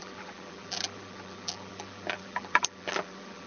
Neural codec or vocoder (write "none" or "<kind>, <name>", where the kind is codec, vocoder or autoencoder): vocoder, BigVGAN v2